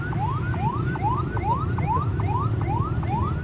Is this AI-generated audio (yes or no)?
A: no